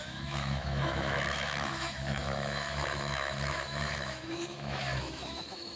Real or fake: fake